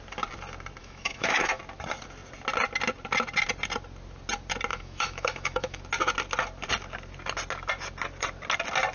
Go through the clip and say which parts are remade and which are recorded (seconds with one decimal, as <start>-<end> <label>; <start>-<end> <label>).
0.0-0.8 recorded; 0.8-1.6 remade; 1.6-4.7 recorded; 4.7-5.8 remade; 5.8-8.9 recorded